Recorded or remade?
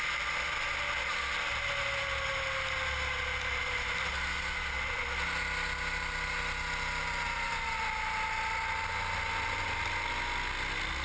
recorded